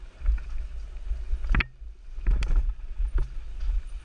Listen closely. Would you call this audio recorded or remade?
recorded